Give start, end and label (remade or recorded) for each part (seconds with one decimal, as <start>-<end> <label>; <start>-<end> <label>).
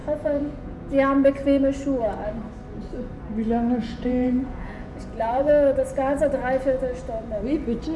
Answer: 0.0-0.9 remade; 0.9-3.8 recorded; 3.8-5.5 remade; 5.5-8.0 recorded